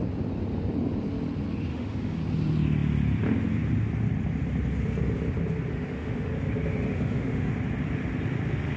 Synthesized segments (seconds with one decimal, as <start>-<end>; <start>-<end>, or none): 1.7-2.2; 5.7-6.3; 6.9-7.5